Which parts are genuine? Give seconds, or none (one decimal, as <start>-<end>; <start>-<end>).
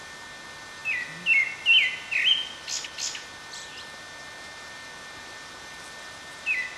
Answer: 0.0-6.8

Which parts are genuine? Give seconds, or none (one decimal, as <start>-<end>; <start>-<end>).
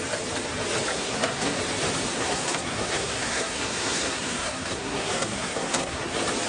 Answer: 0.0-0.9; 1.6-2.1; 6.0-6.5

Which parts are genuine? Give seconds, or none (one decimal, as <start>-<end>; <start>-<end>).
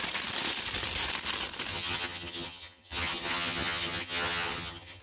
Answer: 0.0-1.7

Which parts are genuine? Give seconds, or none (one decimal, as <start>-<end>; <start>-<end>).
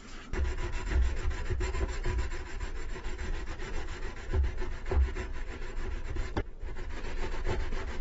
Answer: 0.0-2.0; 3.5-5.3; 6.1-8.0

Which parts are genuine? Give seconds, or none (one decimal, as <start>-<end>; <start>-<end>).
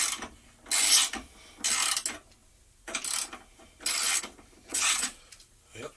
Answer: 0.0-4.7; 5.3-6.0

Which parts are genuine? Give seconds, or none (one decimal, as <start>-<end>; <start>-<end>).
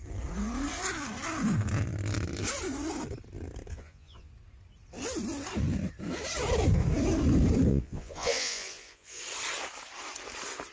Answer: 0.0-3.7; 4.3-7.7; 9.2-10.7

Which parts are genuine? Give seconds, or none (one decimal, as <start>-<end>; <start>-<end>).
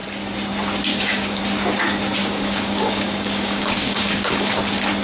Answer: 0.0-0.9; 1.4-2.2; 4.6-5.0